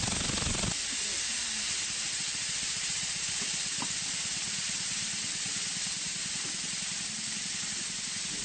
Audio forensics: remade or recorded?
recorded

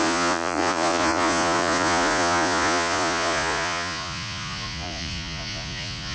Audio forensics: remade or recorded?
remade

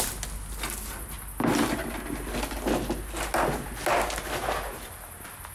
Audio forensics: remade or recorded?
recorded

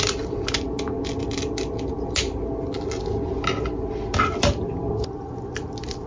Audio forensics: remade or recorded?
recorded